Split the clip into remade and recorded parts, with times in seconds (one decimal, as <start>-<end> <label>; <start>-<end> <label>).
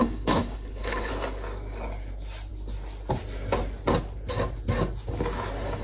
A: 0.0-1.1 remade; 1.1-5.8 recorded